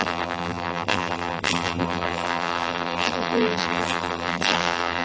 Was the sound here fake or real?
fake